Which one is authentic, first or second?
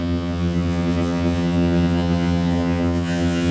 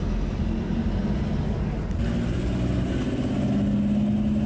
second